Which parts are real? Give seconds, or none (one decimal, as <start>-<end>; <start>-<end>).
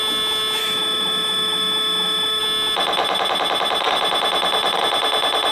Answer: 0.0-0.6; 2.4-5.5